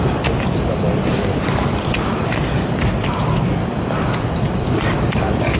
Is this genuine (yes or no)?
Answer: no